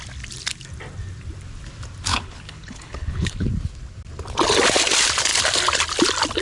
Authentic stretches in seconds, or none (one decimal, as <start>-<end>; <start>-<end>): 0.0-2.1; 3.5-6.4